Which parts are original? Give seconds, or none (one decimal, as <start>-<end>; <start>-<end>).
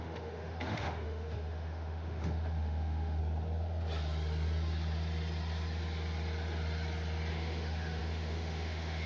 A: 3.2-7.3